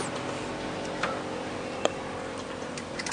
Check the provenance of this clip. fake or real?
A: real